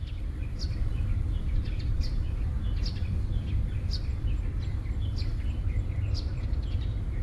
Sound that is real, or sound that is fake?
real